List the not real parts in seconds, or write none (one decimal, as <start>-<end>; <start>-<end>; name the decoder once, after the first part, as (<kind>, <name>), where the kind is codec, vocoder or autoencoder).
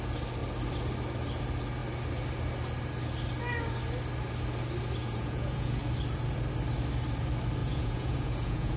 5.0-5.8 (vocoder, Vocos); 7.6-8.8